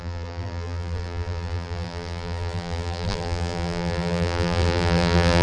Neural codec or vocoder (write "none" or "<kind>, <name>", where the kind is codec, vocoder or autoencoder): vocoder, BigVGAN v2